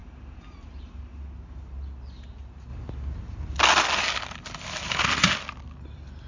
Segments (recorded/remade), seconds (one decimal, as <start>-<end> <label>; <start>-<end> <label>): 0.0-0.8 remade; 0.8-6.3 recorded